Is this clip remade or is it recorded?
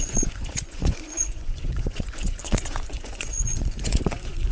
remade